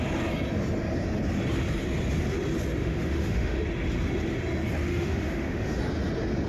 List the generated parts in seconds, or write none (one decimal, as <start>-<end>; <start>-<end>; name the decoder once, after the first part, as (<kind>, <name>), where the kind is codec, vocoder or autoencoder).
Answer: 2.8-3.6 (autoencoder, DAC-VAE); 4.9-5.8